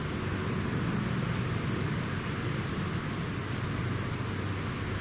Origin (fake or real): real